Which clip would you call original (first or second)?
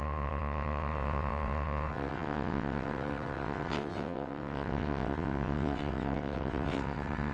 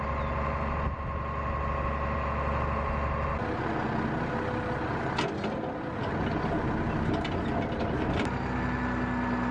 second